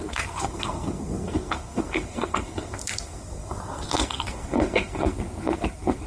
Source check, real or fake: fake